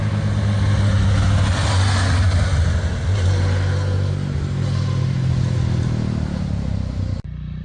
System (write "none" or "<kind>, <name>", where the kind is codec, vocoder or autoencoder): none